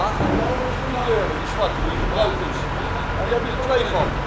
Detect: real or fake real